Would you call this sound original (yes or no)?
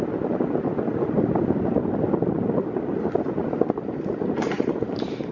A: yes